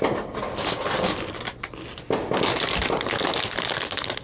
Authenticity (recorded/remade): recorded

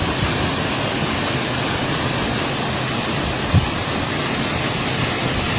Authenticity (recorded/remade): recorded